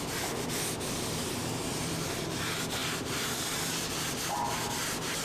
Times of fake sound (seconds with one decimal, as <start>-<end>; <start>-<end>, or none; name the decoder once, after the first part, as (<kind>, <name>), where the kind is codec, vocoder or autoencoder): none